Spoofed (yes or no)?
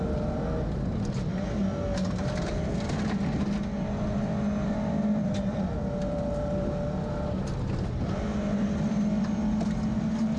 no